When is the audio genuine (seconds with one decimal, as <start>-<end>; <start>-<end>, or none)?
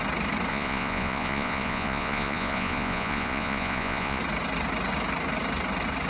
0.0-0.5; 4.2-6.1